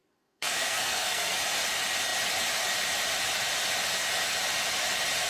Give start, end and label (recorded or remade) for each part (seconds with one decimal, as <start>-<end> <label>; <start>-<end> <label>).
0.0-1.4 remade; 1.4-5.3 recorded